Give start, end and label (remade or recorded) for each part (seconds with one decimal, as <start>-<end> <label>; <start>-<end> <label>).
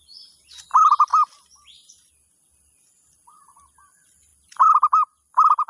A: 0.0-5.7 recorded